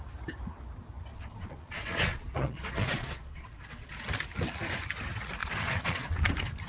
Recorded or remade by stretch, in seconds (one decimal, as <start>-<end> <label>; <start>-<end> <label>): 0.0-1.1 recorded; 1.1-3.9 remade; 3.9-5.4 recorded; 5.4-6.3 remade; 6.3-6.7 recorded